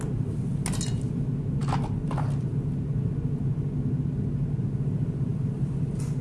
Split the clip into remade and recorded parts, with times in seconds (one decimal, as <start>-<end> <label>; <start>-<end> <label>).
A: 0.0-5.3 recorded; 5.3-5.8 remade; 5.8-6.2 recorded